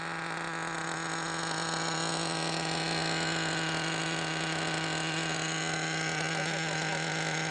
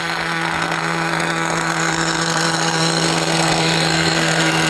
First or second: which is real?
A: first